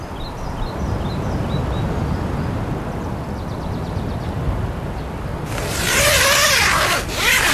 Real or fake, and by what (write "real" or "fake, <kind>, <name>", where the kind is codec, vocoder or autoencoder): real